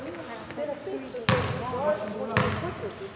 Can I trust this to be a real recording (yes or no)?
yes